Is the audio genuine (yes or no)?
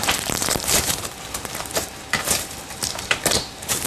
no